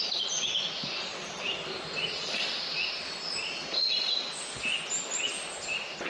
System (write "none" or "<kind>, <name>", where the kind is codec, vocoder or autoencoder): none